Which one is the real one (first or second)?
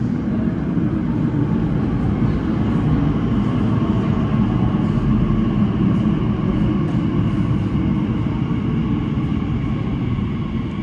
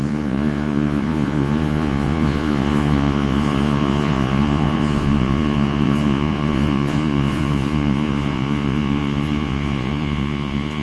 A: first